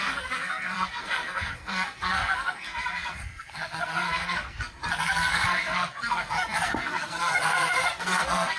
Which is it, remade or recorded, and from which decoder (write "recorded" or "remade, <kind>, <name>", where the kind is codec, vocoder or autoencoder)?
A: remade, codec, SNAC